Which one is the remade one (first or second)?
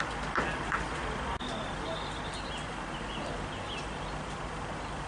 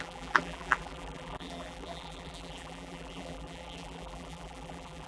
second